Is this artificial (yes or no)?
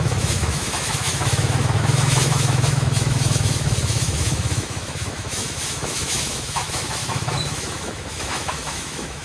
yes